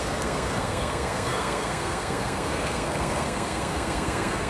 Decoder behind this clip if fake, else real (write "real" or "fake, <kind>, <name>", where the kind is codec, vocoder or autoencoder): fake, codec, SNAC